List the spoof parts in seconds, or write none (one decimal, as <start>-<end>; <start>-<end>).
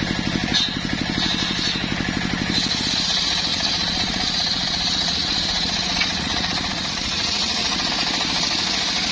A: 3.5-7.9